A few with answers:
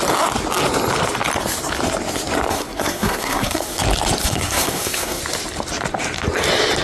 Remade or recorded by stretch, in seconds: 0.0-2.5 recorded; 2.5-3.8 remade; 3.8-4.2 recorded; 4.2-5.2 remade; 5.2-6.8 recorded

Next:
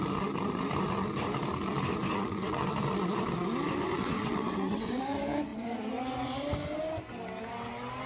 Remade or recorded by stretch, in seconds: 0.0-2.1 recorded; 2.1-2.7 remade; 2.7-4.0 recorded; 4.0-5.0 remade; 5.0-8.1 recorded

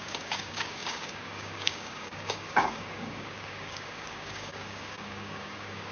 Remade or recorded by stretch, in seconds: 0.0-5.9 remade